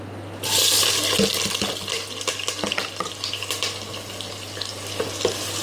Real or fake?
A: real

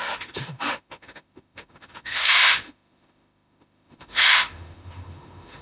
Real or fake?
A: fake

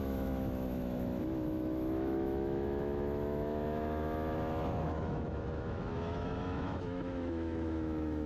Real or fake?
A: fake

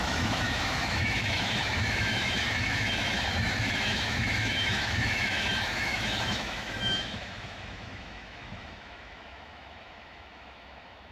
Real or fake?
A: fake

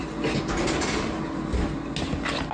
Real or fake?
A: real